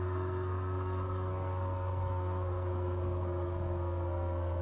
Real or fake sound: fake